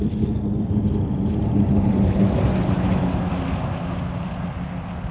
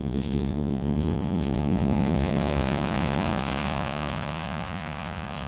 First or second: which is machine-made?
second